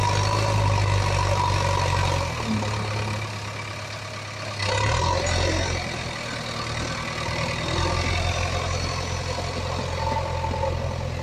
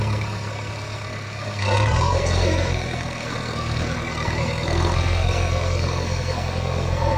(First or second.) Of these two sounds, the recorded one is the first